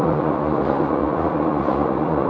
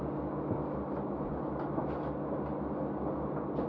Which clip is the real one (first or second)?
second